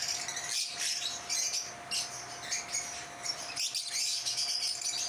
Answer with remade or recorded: recorded